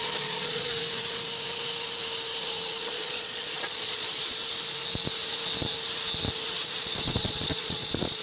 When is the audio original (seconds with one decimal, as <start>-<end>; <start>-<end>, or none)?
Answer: 0.7-2.8; 4.4-6.5